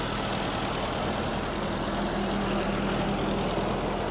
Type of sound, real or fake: real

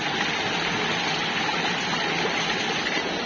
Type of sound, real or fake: real